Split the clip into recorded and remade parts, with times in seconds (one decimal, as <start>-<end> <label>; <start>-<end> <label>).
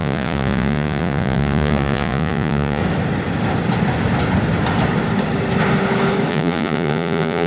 0.0-2.8 remade; 2.8-6.3 recorded; 6.3-7.5 remade